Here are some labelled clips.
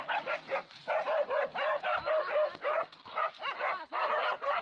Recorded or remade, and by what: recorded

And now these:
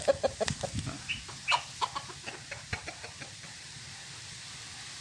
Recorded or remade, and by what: recorded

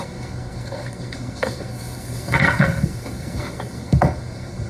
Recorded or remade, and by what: remade, codec, SNAC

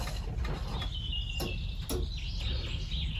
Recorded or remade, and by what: recorded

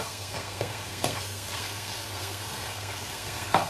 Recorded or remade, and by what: remade, codec, SNAC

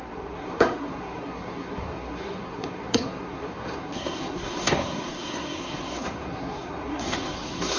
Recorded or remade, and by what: remade, codec, SNAC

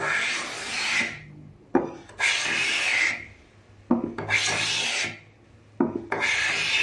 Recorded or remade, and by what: recorded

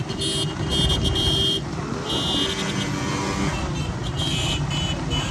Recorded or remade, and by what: recorded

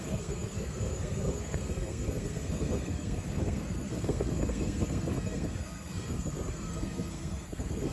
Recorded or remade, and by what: remade, codec, SNAC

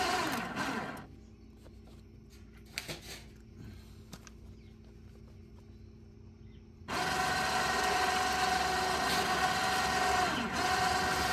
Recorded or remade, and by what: recorded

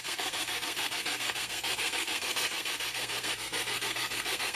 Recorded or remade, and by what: remade, codec, SNAC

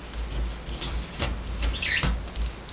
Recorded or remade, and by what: recorded